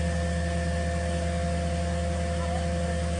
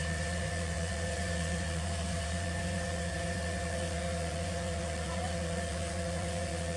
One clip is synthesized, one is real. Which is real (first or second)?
first